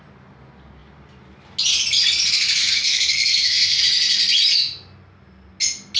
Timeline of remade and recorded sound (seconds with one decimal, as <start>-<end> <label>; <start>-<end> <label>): 0.0-2.6 recorded; 2.6-3.8 remade; 3.8-6.0 recorded

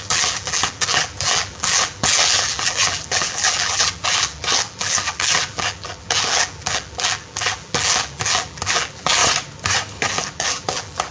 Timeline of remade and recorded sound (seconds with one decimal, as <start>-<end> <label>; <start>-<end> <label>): 0.0-9.2 remade; 9.2-10.1 recorded; 10.1-11.1 remade